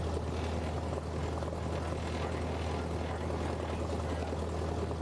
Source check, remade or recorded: recorded